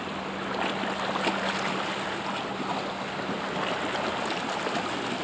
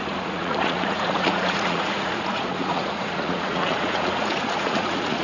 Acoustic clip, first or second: first